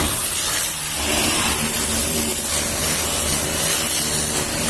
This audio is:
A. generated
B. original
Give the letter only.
B